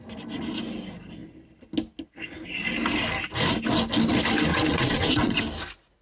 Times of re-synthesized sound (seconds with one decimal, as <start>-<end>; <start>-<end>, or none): 4.5-5.4